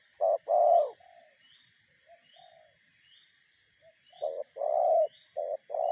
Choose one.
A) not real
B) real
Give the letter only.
B